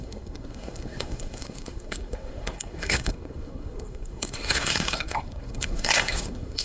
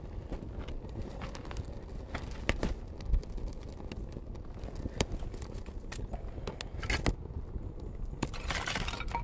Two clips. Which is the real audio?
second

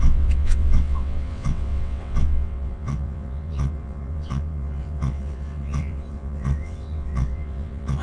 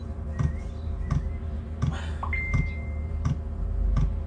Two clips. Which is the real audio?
second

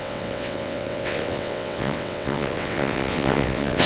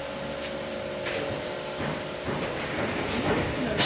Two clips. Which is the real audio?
second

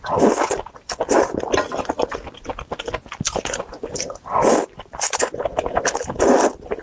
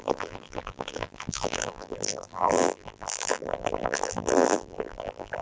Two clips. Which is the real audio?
first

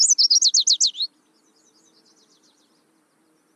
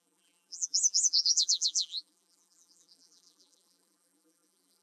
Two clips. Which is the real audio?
first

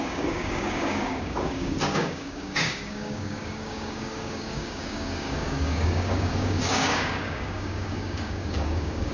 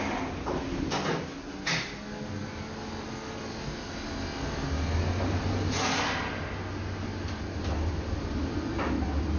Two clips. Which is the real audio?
second